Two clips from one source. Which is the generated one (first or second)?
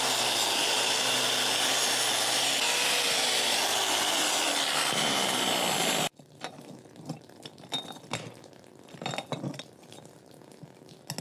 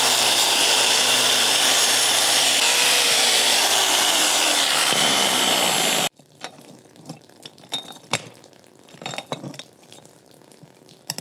second